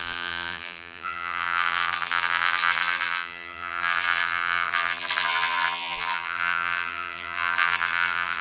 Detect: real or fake fake